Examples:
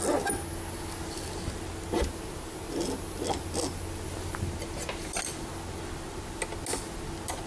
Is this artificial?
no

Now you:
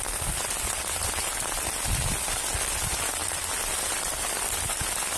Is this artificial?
no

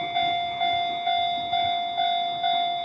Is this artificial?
yes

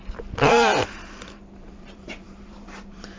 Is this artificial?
yes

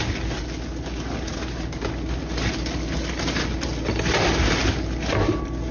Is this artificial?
no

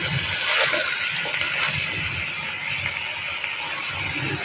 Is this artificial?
no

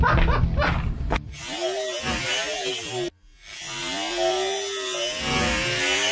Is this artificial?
no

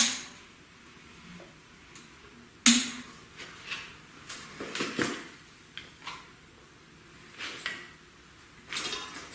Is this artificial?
no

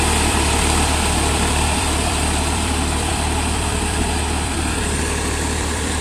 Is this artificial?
yes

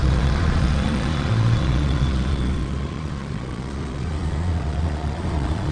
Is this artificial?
yes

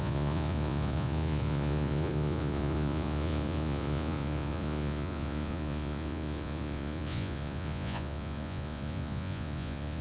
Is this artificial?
yes